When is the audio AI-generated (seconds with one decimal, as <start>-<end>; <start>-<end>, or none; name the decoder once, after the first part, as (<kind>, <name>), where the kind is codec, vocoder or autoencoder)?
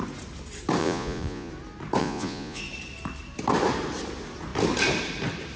0.8-1.5 (vocoder, Vocos); 2.0-2.6